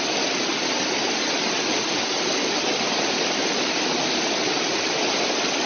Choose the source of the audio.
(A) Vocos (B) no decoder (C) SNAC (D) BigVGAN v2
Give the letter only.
B